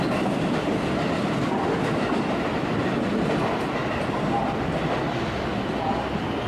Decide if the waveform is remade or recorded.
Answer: recorded